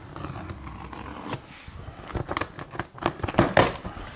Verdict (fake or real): real